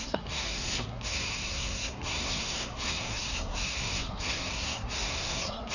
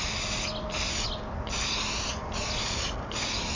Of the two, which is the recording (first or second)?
second